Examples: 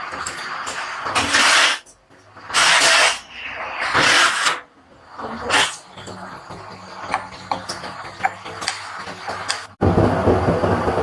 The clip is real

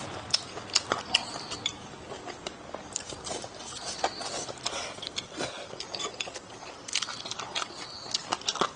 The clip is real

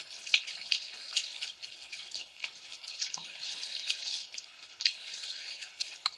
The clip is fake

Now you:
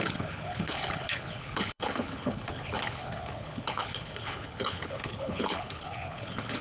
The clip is fake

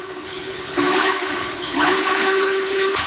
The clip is fake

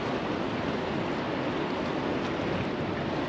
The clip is real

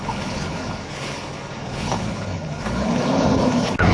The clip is fake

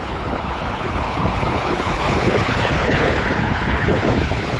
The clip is fake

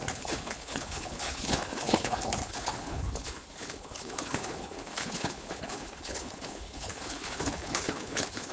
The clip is fake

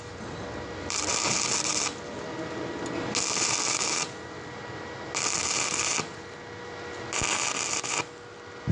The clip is real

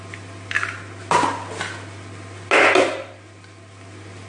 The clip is real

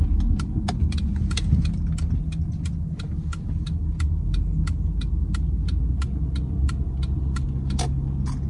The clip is real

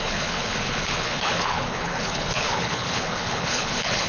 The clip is fake